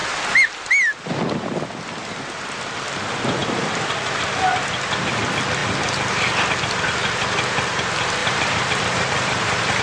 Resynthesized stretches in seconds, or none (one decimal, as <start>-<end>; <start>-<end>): 8.2-9.8